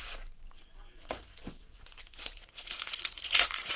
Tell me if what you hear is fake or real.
fake